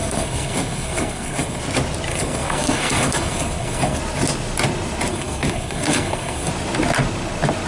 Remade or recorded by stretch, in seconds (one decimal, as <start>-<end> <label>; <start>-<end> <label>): 0.0-1.6 remade; 1.6-2.1 recorded; 2.1-4.0 remade; 4.0-5.1 recorded; 5.1-6.5 remade; 6.5-7.7 recorded